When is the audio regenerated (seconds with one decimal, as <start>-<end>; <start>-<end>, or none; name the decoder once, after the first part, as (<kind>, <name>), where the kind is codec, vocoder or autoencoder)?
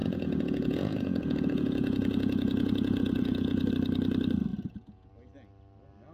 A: 0.0-3.7 (vocoder, Vocos); 4.5-5.1